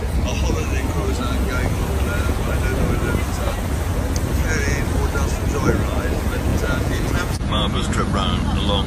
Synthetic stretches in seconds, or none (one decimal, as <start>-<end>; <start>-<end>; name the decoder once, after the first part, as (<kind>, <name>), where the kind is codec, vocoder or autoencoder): 6.5-8.1 (vocoder, Vocos)